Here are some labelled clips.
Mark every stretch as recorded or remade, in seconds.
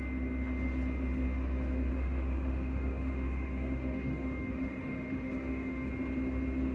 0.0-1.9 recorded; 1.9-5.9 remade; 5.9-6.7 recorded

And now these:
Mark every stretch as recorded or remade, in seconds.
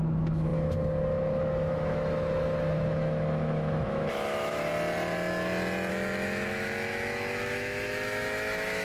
0.0-4.7 remade; 4.7-5.9 recorded; 5.9-8.8 remade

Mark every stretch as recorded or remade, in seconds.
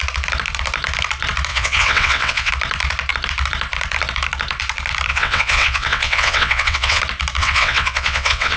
0.0-1.5 recorded; 1.5-2.5 remade; 2.5-5.1 recorded; 5.1-7.0 remade; 7.0-7.4 recorded; 7.4-8.6 remade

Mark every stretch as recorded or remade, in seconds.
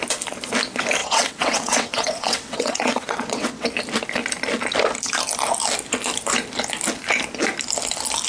0.0-1.0 recorded; 1.0-3.7 remade; 3.7-8.3 recorded